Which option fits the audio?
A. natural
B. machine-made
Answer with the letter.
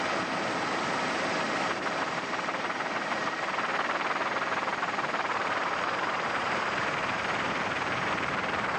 B